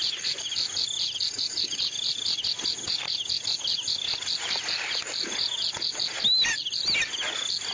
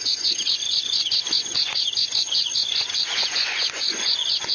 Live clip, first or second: first